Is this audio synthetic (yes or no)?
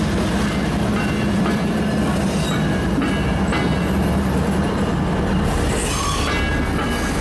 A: no